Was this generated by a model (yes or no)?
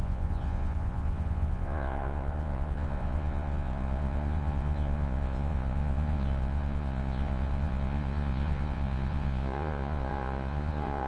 yes